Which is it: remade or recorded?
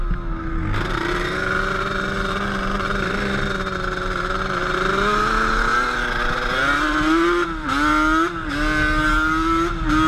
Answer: recorded